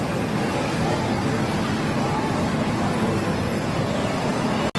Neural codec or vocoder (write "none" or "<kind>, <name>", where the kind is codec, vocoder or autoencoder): none